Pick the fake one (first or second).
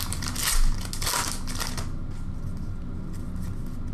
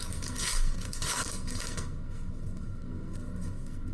second